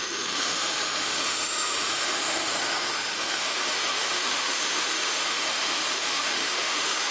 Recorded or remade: remade